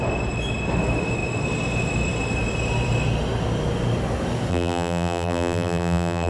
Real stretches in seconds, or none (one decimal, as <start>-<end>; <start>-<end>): 0.0-4.5

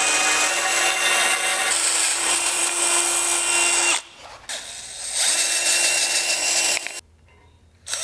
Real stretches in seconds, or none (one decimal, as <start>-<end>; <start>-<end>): 0.0-1.5; 2.8-8.0

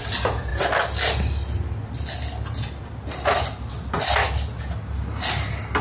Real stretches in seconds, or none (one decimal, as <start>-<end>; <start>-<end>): 0.0-5.8

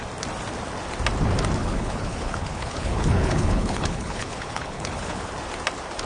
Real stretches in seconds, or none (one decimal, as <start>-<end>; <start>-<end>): 0.0-1.6; 5.3-6.1

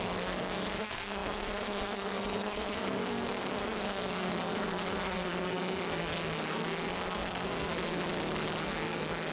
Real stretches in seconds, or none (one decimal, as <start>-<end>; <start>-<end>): 8.0-8.6